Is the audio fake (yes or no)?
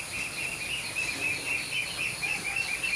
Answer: no